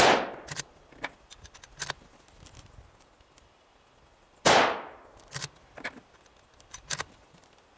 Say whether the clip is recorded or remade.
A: recorded